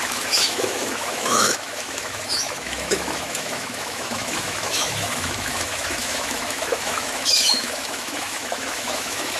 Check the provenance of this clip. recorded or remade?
remade